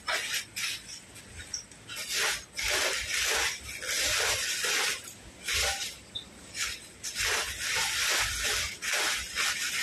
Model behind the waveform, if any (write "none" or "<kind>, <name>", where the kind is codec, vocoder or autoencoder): none